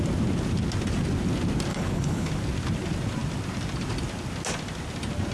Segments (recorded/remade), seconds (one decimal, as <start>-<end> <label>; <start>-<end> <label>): 0.0-1.7 recorded; 1.7-2.3 remade; 2.3-5.3 recorded